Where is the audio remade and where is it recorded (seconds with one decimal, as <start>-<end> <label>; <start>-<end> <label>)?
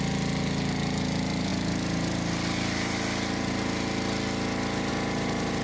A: 0.0-5.6 recorded